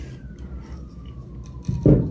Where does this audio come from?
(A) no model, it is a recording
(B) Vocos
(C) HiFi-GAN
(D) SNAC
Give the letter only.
A